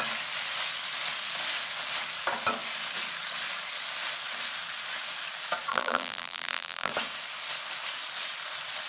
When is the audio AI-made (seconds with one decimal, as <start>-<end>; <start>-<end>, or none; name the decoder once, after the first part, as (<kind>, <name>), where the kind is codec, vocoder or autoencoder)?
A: 5.7-6.9 (vocoder, BigVGAN v2)